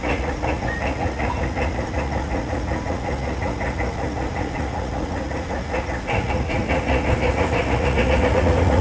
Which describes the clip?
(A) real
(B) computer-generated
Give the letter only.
B